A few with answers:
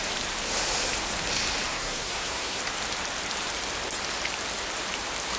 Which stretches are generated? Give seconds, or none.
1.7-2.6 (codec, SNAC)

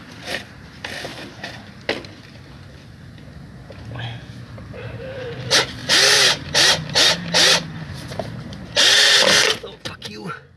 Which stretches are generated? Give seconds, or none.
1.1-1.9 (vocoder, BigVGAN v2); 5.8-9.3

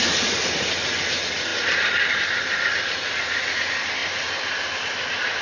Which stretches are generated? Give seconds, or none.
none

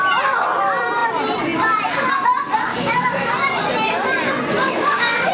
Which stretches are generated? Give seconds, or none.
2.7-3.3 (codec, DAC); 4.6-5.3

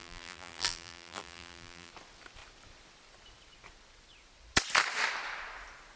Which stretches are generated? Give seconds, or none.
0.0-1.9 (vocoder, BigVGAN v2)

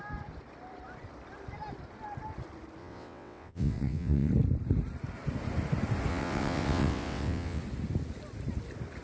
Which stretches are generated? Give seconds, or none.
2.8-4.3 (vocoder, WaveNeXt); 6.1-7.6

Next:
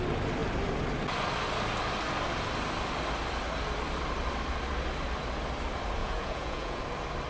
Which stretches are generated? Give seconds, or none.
6.0-6.8 (vocoder, Vocos)

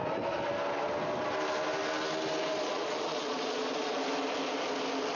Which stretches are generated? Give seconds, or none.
2.7-4.0 (vocoder, Vocos)